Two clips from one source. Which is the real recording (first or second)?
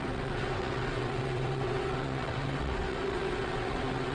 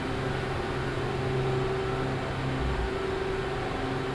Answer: second